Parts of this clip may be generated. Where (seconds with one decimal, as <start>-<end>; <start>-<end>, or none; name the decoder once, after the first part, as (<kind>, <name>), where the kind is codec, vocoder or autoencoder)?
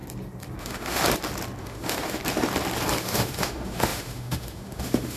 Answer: 0.6-1.0 (autoencoder, DAC-VAE); 1.6-2.2; 3.0-5.2